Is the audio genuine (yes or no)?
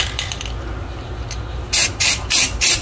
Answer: yes